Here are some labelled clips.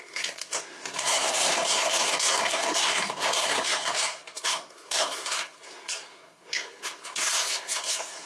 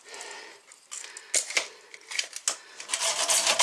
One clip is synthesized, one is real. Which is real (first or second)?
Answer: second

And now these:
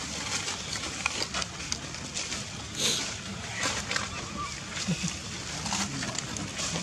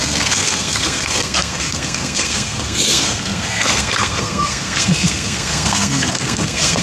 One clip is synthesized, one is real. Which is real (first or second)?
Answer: first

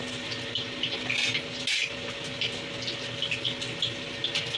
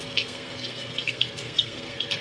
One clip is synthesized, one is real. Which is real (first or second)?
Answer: first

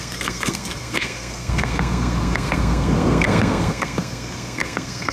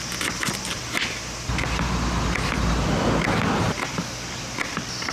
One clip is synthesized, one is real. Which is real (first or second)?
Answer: second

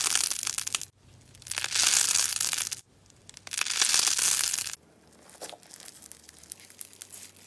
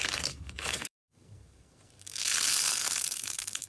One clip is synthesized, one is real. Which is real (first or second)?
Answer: first